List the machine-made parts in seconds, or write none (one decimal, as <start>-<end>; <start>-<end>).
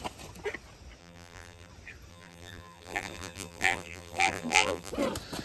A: 1.0-1.7; 2.1-4.9